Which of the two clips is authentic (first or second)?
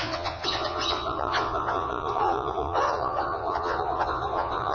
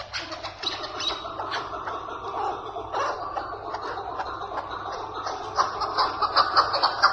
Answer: second